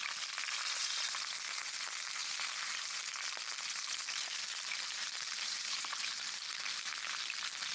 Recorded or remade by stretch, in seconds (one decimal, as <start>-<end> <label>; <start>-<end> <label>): 0.0-2.2 recorded; 2.2-3.6 remade; 3.6-5.0 recorded; 5.0-6.5 remade; 6.5-7.7 recorded